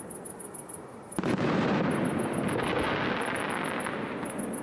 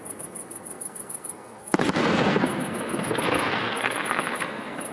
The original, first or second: first